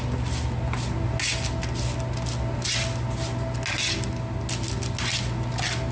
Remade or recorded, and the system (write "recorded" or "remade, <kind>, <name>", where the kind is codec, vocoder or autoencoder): recorded